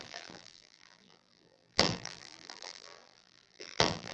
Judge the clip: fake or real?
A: fake